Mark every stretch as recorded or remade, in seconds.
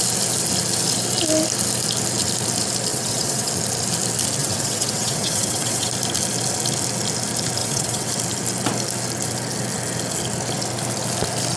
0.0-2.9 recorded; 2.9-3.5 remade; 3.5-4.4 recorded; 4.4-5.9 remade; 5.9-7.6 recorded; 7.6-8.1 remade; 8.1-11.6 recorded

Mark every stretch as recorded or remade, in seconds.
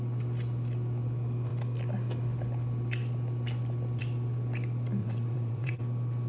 0.0-5.0 recorded; 5.0-5.8 remade; 5.8-6.3 recorded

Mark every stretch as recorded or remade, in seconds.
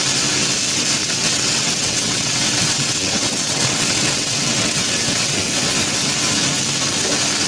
0.0-1.0 recorded; 1.0-5.5 remade; 5.5-7.5 recorded